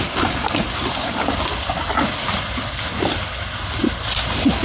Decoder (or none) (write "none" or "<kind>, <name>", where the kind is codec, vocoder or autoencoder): none